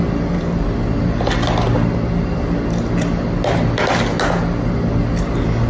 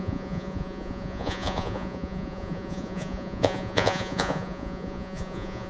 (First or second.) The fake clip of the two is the second